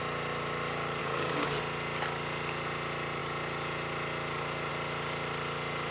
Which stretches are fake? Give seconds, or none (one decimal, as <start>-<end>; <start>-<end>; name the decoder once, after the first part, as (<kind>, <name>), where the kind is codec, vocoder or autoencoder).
1.0-1.6 (codec, DAC)